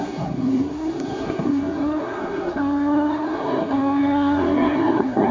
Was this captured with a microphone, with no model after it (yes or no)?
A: no